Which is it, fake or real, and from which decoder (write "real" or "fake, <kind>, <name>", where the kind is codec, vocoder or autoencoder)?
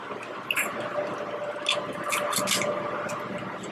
real